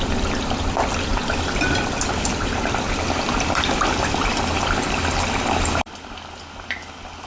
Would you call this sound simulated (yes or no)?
no